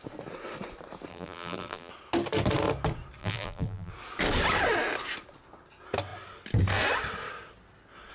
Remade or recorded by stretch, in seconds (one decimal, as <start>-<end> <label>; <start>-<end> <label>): 0.0-1.1 recorded; 1.1-1.9 remade; 1.9-3.2 recorded; 3.2-3.9 remade; 3.9-8.1 recorded